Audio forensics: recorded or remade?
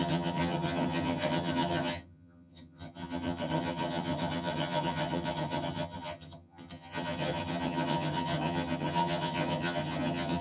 remade